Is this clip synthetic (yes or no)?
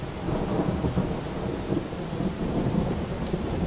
no